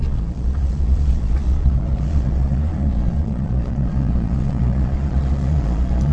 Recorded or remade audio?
remade